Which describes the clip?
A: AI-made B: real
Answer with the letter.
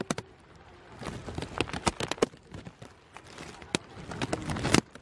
B